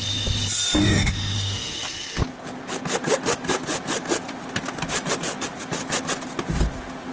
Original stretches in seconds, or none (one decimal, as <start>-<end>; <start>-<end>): 0.0-0.8; 1.7-7.1